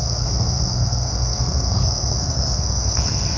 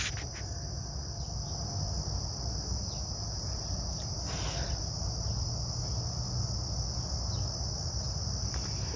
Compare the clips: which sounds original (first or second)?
second